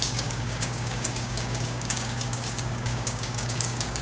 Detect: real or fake fake